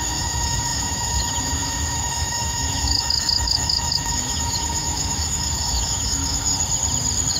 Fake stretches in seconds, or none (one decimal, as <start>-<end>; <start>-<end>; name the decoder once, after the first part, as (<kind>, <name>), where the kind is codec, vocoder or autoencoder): 0.0-6.5 (autoencoder, DAC-VAE)